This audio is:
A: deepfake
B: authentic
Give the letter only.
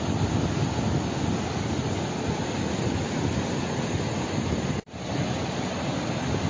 B